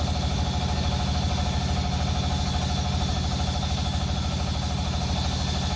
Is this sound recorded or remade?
recorded